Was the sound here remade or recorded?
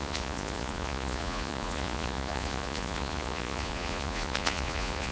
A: remade